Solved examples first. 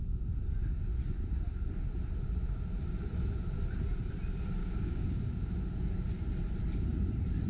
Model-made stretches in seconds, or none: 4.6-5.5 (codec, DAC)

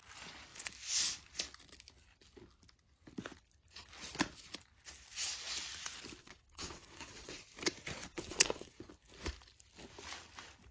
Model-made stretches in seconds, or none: 6.2-7.4 (vocoder, WaveNeXt); 8.0-8.9